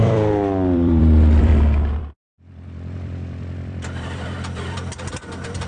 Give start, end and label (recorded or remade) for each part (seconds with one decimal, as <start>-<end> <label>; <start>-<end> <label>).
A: 0.0-1.5 remade; 1.5-2.0 recorded; 2.0-5.7 remade